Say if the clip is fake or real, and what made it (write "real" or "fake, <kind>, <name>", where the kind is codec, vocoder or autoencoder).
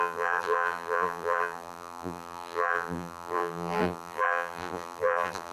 fake, vocoder, BigVGAN v2